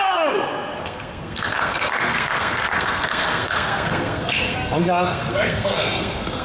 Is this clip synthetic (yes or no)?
yes